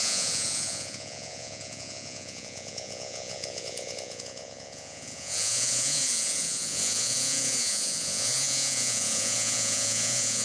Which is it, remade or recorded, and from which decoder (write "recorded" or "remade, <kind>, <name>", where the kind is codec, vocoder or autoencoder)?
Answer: remade, vocoder, Vocos